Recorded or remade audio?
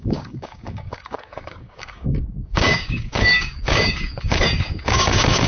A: remade